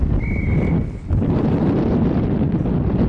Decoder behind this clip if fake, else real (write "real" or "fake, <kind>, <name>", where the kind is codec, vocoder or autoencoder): real